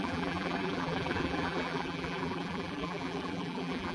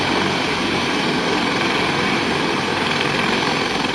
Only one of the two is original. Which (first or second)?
second